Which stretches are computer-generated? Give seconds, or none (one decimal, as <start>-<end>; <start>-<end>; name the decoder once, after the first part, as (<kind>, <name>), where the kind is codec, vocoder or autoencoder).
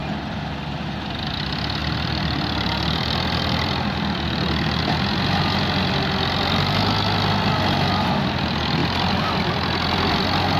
0.0-1.4 (vocoder, BigVGAN v2); 1.8-4.8; 8.8-9.9